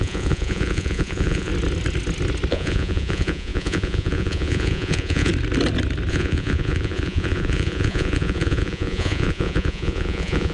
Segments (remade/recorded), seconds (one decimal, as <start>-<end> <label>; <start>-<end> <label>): 0.0-1.5 remade; 1.5-2.5 recorded; 2.5-5.3 remade; 5.3-6.1 recorded; 6.1-10.5 remade